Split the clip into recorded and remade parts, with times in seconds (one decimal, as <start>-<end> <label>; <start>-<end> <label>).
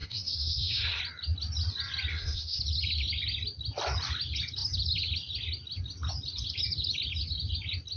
0.0-1.0 remade; 1.0-2.1 recorded; 2.1-2.6 remade; 2.6-8.0 recorded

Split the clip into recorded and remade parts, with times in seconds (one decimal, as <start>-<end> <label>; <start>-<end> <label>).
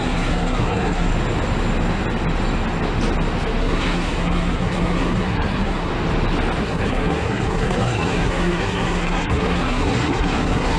0.0-1.1 remade; 1.1-3.6 recorded; 3.6-5.9 remade; 5.9-6.6 recorded; 6.6-10.8 remade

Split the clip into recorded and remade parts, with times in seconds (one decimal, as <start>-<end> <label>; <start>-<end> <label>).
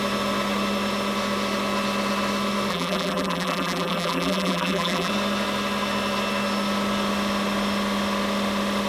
0.0-2.7 recorded; 2.7-5.1 remade; 5.1-8.9 recorded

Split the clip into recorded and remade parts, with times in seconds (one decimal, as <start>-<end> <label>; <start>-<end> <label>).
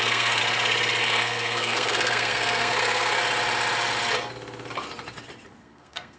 0.0-0.4 remade; 0.4-1.0 recorded; 1.0-3.2 remade; 3.2-5.6 recorded; 5.6-6.2 remade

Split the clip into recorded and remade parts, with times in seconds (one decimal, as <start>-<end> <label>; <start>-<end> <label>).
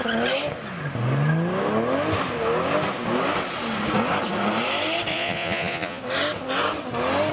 0.0-5.1 recorded; 5.1-6.0 remade; 6.0-7.3 recorded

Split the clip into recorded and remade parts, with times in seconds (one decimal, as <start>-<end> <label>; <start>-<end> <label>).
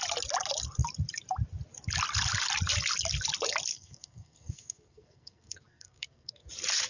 0.0-3.7 recorded; 3.7-6.5 remade; 6.5-6.9 recorded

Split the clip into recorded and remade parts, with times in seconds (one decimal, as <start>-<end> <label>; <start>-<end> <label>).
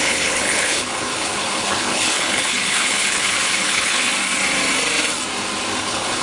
0.0-4.1 remade; 4.1-5.8 recorded; 5.8-6.2 remade